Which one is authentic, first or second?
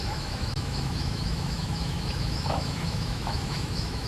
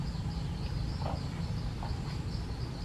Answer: second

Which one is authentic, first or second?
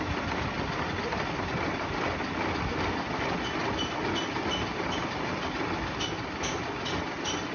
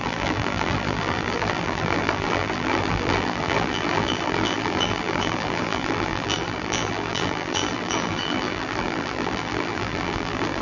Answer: first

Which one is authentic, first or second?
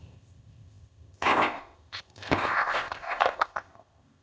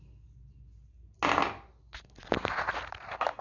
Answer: second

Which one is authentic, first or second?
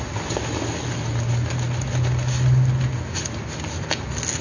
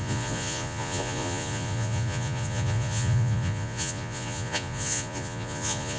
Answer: first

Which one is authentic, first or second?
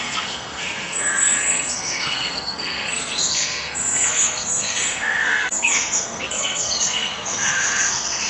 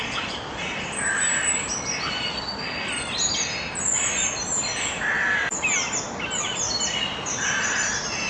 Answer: second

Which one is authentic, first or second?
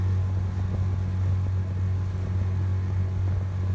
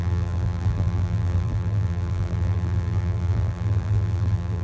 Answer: first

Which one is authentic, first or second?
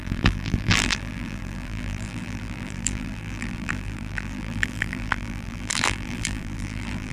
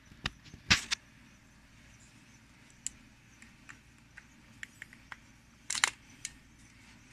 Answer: second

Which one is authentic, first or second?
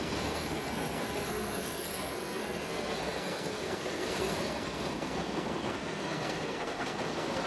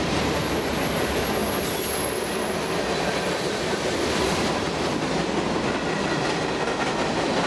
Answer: second